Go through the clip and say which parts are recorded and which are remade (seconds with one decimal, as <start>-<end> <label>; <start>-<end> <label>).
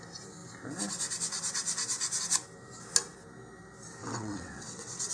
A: 0.0-4.0 recorded; 4.0-5.1 remade